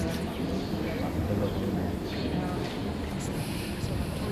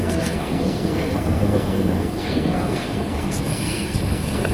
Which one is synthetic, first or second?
second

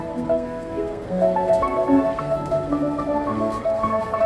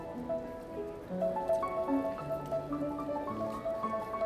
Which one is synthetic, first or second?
first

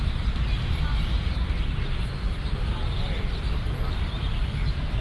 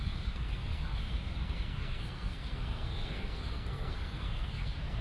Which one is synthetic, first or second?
second